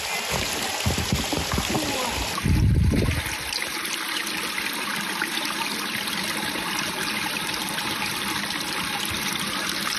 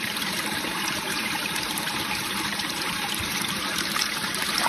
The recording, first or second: first